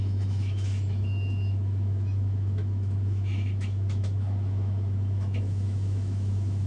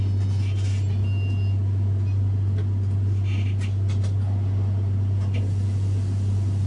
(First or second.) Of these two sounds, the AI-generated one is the first